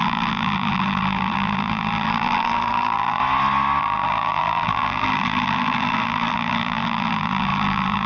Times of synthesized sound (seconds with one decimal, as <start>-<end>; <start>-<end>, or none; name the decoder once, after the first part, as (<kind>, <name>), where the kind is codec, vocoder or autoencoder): 0.0-3.2 (vocoder, BigVGAN v2); 3.8-8.1